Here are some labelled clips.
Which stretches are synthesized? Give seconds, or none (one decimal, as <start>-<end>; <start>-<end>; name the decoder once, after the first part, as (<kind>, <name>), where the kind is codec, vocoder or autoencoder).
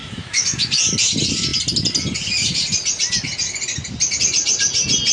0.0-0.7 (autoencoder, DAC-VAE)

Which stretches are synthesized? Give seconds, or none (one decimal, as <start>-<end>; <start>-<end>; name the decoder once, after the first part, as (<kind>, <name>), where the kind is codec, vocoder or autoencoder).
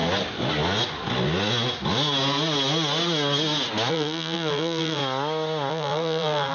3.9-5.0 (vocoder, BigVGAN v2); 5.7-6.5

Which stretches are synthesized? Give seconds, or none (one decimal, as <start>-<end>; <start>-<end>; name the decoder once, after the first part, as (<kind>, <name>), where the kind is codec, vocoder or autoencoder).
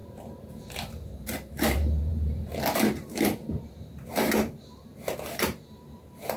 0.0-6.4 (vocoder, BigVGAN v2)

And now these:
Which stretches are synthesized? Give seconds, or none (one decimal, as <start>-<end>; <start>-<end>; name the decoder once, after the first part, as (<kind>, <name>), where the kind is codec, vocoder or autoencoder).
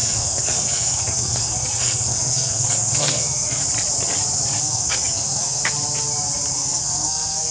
0.0-3.6 (codec, SNAC); 4.6-5.6; 6.5-7.5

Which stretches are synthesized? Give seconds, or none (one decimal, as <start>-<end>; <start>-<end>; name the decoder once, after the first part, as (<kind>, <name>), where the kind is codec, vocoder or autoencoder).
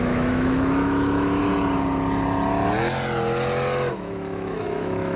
0.0-1.4 (autoencoder, DAC-VAE); 3.9-5.2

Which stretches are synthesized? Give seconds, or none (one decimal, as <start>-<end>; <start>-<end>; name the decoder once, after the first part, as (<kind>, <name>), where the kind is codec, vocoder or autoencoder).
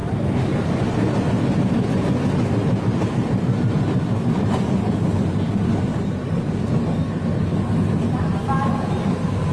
none